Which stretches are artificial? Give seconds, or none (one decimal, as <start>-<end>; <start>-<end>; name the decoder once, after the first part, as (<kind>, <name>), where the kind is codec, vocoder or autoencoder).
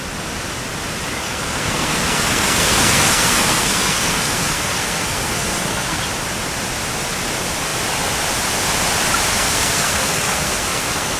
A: 1.2-6.0 (codec, SNAC); 9.3-11.2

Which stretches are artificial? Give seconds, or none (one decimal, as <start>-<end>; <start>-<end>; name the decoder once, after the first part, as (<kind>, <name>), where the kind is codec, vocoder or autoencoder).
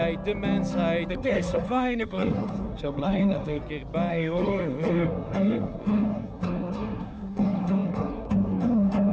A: 1.1-3.6 (codec, SNAC); 4.1-9.1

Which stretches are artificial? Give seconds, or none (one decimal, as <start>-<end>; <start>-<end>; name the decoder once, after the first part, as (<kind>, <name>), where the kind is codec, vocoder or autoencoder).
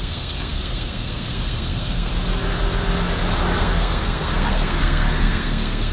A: 0.0-2.1 (codec, SNAC); 3.6-5.9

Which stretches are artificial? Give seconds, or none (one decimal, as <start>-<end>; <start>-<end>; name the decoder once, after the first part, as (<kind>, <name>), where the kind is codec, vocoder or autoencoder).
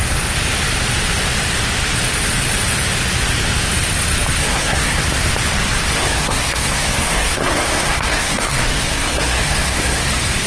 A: 4.4-5.0 (codec, SNAC); 5.9-10.1